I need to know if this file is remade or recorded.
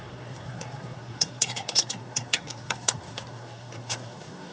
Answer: remade